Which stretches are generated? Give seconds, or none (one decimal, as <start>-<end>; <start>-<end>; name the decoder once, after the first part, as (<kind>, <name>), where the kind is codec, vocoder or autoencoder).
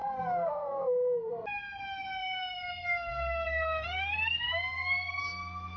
0.0-0.8 (codec, SNAC); 2.2-5.2